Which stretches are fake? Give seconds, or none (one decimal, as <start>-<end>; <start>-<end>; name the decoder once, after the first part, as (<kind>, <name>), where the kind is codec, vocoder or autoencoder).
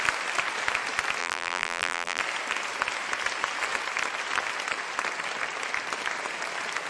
1.2-2.2 (vocoder, BigVGAN v2)